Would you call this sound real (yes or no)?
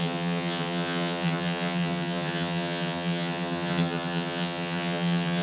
no